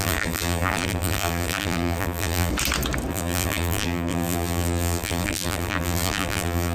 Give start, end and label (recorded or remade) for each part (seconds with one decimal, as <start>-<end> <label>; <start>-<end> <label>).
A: 0.0-2.5 remade; 2.5-3.1 recorded; 3.1-6.7 remade